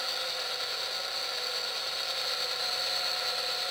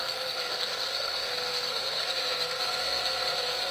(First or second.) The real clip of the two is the first